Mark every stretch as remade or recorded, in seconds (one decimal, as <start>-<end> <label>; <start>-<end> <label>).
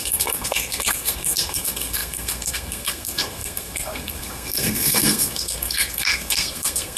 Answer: 0.0-7.0 remade